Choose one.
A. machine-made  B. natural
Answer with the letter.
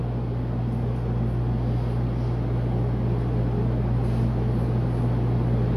B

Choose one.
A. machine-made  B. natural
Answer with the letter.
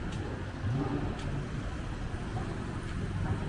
B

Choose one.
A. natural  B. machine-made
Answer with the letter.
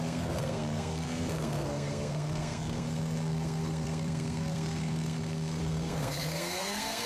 B